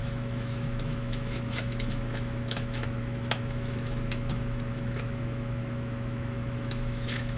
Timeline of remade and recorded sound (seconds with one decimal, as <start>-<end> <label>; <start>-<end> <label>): 0.0-7.4 remade